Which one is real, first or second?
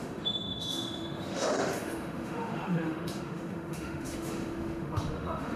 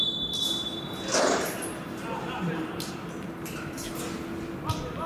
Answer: second